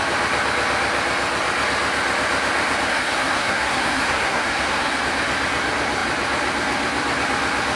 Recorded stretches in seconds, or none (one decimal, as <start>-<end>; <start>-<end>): 0.0-2.9; 5.0-7.8